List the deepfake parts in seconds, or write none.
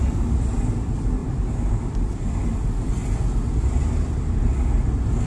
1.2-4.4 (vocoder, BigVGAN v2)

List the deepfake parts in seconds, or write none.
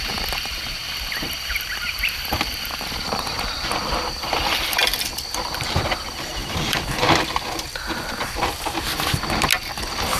0.8-5.0 (vocoder, BigVGAN v2); 6.4-8.6